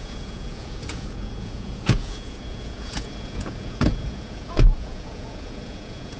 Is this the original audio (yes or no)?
no